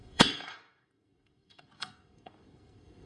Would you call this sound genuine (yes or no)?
no